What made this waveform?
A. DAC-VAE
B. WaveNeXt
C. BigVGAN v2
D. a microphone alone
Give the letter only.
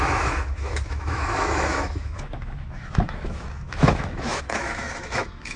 A